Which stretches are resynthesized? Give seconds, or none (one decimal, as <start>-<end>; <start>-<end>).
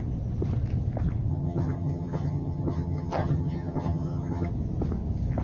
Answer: 1.3-4.5